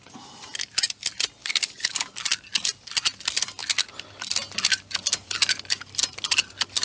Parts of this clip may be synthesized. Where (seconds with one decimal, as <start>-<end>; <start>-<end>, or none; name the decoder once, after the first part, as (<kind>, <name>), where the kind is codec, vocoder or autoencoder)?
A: 1.4-2.1 (codec, DAC)